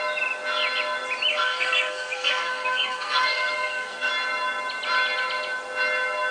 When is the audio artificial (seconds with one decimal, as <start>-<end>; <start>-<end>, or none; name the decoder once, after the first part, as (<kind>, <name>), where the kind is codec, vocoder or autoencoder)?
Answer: 1.3-4.1 (codec, SNAC)